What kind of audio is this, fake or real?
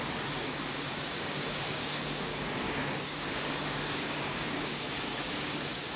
fake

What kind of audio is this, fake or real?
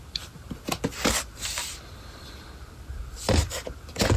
fake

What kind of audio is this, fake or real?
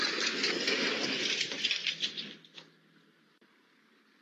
real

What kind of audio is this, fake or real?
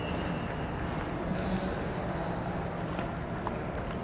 real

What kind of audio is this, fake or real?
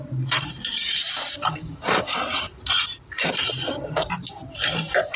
fake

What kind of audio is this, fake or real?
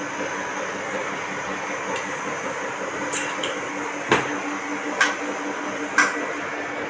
real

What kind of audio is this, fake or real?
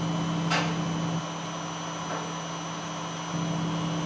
real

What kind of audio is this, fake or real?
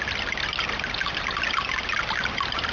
real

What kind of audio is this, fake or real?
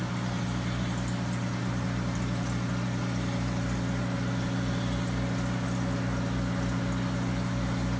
real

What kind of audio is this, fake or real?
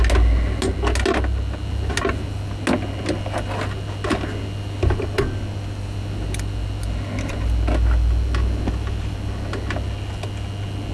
real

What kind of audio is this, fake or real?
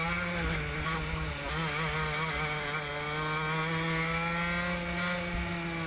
real